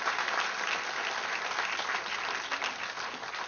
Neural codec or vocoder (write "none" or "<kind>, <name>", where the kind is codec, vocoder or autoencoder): none